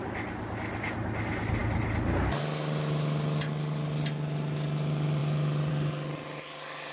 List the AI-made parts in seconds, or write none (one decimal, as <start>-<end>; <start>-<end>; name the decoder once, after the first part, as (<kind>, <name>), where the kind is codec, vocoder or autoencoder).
none

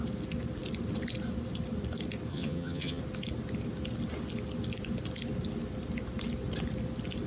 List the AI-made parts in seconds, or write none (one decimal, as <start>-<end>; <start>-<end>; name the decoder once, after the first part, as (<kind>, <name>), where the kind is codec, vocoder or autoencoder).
2.3-3.0 (vocoder, HiFi-GAN)

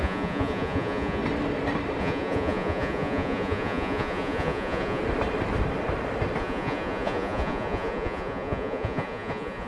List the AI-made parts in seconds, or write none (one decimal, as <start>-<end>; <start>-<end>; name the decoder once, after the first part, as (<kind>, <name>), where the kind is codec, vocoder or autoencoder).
0.0-1.2 (vocoder, Vocos); 2.0-5.0; 6.4-9.7